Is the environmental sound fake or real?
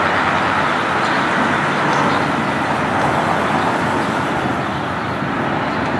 real